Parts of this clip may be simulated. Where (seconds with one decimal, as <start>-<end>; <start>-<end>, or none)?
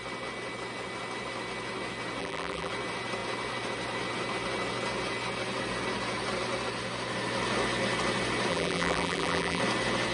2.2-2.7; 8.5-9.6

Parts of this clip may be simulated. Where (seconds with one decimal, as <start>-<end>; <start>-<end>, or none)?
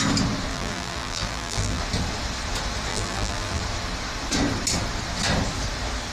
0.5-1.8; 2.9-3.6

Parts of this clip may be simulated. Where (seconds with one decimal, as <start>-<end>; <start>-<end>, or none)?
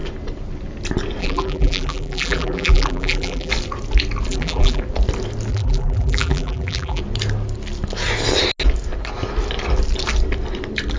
1.2-3.5; 4.3-4.8; 5.5-7.0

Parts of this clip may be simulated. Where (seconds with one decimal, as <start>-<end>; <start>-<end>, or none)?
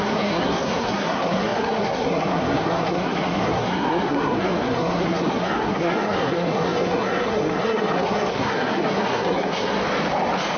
0.0-9.8